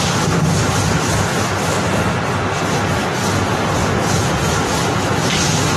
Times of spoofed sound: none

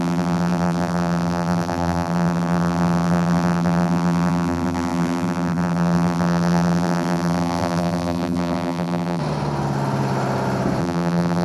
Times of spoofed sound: 0.0-9.2 (vocoder, BigVGAN v2); 10.8-11.4

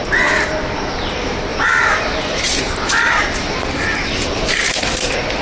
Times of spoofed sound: 0.7-5.4 (vocoder, BigVGAN v2)

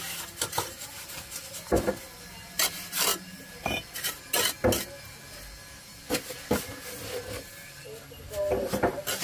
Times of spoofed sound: 3.1-4.1 (vocoder, BigVGAN v2)

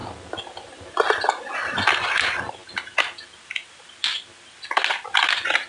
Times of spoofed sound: none